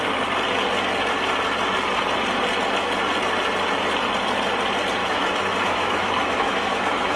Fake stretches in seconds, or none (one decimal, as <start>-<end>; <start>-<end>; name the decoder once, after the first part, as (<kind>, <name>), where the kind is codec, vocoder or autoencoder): 5.0-7.2 (autoencoder, DAC-VAE)